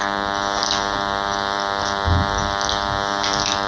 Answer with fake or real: real